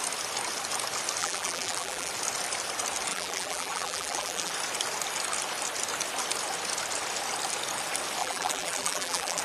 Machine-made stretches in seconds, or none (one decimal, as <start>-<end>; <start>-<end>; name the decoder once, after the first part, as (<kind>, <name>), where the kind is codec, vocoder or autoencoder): 1.2-2.1 (vocoder, BigVGAN v2); 3.1-4.5; 8.2-9.4